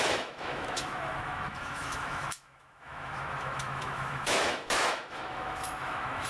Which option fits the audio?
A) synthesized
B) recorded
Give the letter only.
A